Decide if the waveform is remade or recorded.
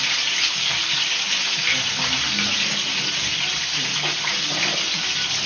recorded